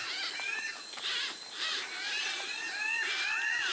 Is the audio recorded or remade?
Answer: recorded